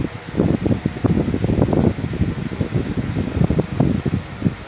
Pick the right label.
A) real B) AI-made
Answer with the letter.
A